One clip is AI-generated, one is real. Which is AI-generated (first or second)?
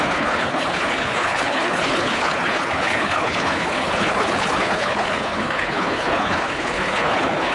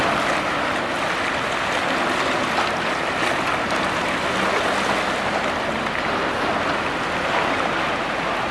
first